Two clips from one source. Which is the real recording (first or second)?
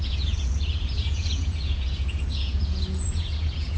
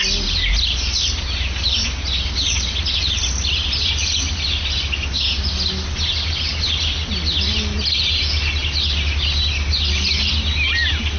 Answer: second